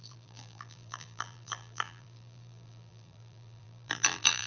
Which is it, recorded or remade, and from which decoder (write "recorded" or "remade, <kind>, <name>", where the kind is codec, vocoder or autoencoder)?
remade, vocoder, BigVGAN v2